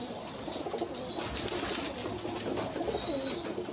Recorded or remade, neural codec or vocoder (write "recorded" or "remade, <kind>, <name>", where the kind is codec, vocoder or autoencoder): recorded